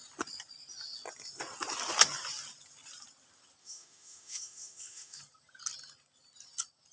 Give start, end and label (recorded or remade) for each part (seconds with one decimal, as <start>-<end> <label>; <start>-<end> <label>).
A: 0.0-3.6 recorded; 3.6-5.2 remade; 5.2-6.9 recorded